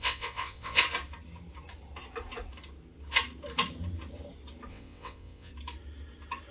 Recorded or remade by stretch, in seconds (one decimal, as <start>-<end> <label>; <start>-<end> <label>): 0.0-0.8 remade; 0.8-4.7 recorded; 4.7-5.5 remade; 5.5-6.5 recorded